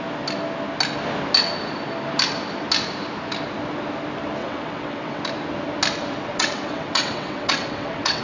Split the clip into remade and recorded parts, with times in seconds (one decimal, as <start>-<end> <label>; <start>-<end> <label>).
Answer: 0.0-4.4 recorded; 4.4-5.2 remade; 5.2-6.3 recorded; 6.3-8.2 remade